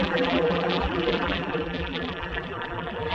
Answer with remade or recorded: remade